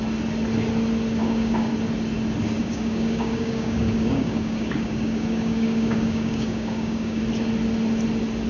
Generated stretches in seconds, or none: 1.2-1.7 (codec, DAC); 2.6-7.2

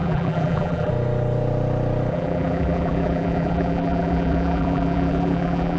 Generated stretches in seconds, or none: 0.0-0.9 (vocoder, BigVGAN v2); 2.1-5.8

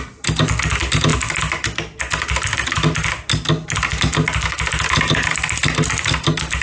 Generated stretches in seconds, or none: none

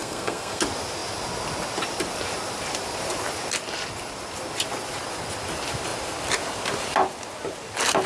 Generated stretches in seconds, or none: 0.0-0.6 (codec, SNAC)

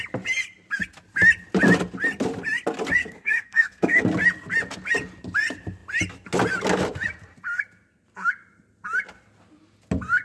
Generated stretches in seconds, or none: 3.0-4.0 (codec, SNAC)

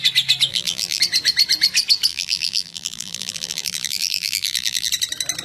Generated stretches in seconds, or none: 0.5-1.0 (vocoder, BigVGAN v2); 2.1-4.9

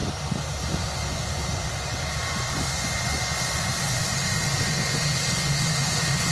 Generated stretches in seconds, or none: 0.6-6.3 (vocoder, Vocos)